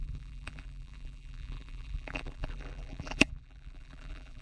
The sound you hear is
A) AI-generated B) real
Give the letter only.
A